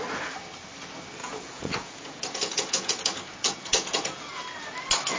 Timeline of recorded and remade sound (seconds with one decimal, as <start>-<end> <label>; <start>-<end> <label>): 0.0-1.2 recorded; 1.2-4.3 remade; 4.3-5.2 recorded